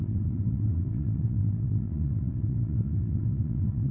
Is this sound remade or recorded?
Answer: remade